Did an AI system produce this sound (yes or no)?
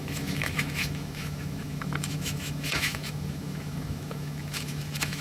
yes